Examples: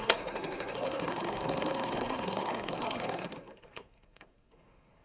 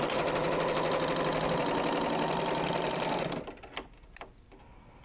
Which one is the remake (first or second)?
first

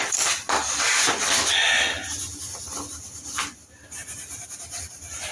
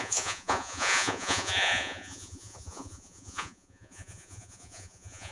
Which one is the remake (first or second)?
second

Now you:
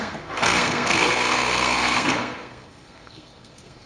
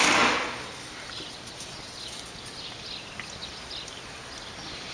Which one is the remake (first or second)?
first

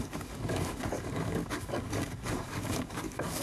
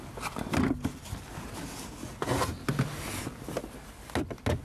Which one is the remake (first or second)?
first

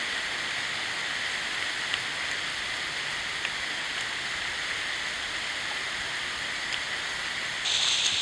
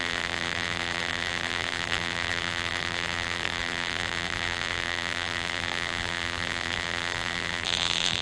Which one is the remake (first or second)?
second